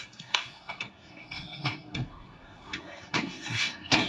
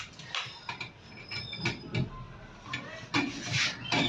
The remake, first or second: first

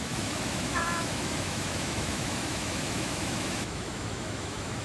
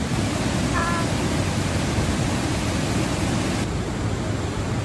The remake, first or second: first